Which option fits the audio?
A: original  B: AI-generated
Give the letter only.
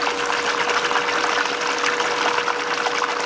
A